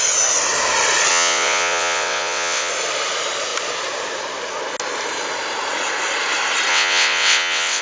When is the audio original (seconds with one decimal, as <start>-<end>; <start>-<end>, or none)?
0.0-1.1; 2.7-6.7